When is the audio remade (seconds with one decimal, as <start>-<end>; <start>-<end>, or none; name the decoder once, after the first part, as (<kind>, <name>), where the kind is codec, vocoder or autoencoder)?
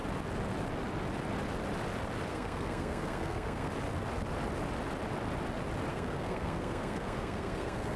2.3-3.7 (codec, SNAC); 5.9-8.0